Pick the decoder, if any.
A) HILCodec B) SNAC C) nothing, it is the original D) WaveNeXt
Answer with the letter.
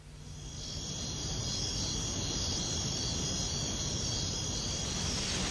C